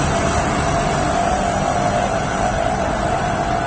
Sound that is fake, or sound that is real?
real